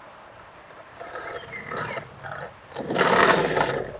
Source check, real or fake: fake